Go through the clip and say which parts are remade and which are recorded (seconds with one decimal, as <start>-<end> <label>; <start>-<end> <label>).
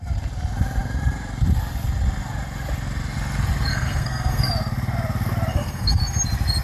0.0-3.7 recorded; 3.7-4.5 remade; 4.5-5.5 recorded; 5.5-6.0 remade; 6.0-6.6 recorded